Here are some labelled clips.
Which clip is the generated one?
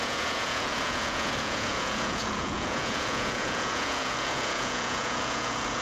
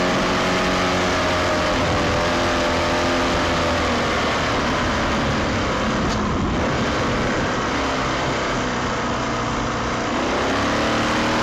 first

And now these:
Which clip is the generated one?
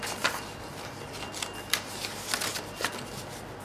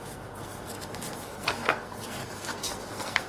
second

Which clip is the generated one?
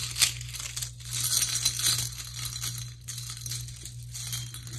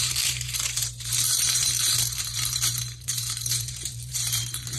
second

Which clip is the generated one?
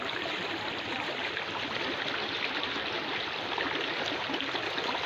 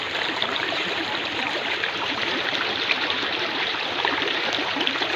second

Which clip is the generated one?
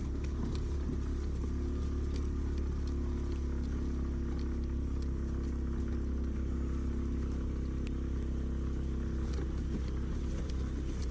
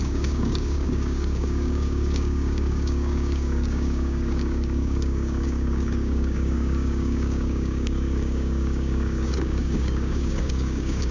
second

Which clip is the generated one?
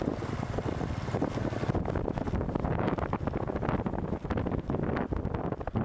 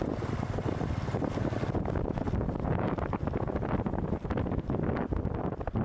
second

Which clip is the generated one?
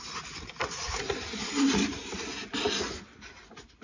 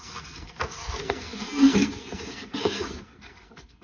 second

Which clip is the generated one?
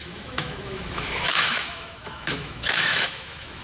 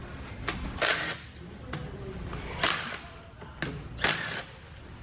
first